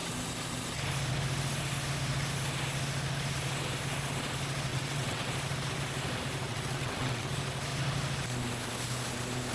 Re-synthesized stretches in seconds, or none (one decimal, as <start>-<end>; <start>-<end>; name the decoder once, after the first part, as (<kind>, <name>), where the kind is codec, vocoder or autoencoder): 4.7-5.3 (vocoder, WaveNeXt); 6.5-7.3